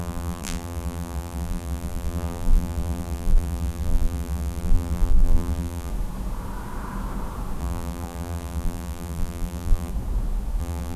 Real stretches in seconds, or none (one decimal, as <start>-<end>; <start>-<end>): 5.9-7.6; 9.9-10.6